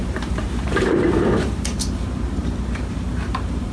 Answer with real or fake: fake